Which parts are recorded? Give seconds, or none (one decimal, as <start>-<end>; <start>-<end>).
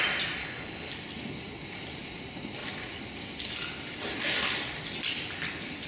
0.0-0.4; 0.9-5.9